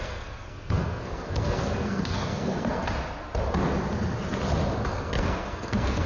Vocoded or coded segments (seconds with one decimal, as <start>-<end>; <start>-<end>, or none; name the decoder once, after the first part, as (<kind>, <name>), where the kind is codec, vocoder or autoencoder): 0.0-2.8 (codec, SNAC); 4.9-6.1